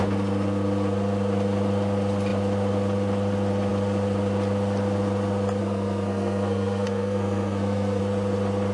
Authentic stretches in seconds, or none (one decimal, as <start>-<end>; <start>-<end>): 0.0-5.6; 8.0-8.7